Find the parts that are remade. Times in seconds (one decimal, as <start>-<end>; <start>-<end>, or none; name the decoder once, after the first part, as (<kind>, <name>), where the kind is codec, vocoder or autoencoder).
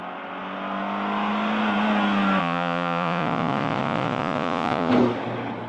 2.4-4.9 (vocoder, Vocos)